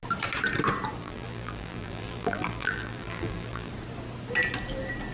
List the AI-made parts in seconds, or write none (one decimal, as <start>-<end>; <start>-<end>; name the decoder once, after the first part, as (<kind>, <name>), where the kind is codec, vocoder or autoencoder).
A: 1.0-3.7 (vocoder, BigVGAN v2)